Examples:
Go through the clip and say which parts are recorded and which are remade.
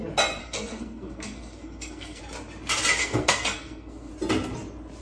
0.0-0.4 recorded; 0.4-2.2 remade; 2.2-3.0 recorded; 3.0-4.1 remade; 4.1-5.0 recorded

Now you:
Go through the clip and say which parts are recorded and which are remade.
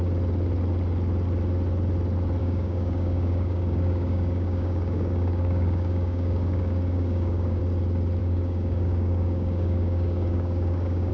0.0-2.4 recorded; 2.4-7.6 remade; 7.6-8.2 recorded; 8.2-11.1 remade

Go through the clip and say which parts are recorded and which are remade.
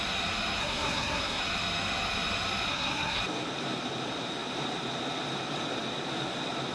0.0-0.6 recorded; 0.6-1.4 remade; 1.4-2.7 recorded; 2.7-3.2 remade; 3.2-6.7 recorded